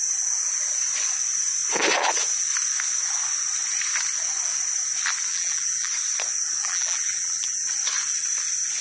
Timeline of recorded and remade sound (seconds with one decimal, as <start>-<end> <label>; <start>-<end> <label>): 0.0-5.3 recorded; 5.3-5.9 remade; 5.9-6.6 recorded; 6.6-7.7 remade; 7.7-8.8 recorded